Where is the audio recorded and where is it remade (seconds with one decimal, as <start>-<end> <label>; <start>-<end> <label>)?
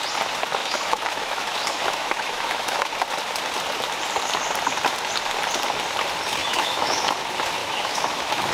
0.0-0.6 recorded; 0.6-2.9 remade; 2.9-6.4 recorded; 6.4-7.1 remade; 7.1-7.6 recorded; 7.6-8.5 remade